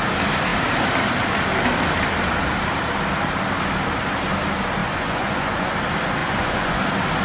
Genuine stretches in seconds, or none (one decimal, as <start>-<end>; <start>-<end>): 0.0-4.8; 5.7-6.2; 6.8-7.2

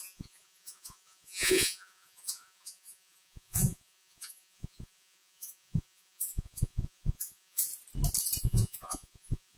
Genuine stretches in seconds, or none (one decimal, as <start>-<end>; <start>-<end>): 7.7-8.4

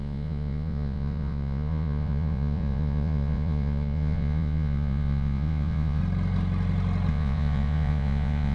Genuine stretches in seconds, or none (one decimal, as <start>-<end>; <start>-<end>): 6.0-7.1

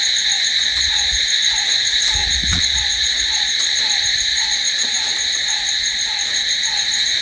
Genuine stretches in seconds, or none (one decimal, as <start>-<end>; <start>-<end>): 0.0-0.6; 1.2-2.2; 3.8-4.3; 5.1-7.2